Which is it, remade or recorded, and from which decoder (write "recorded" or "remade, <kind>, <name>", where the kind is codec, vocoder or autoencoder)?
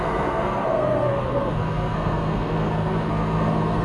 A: remade, codec, SNAC